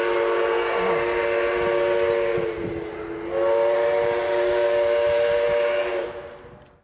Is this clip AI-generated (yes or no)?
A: no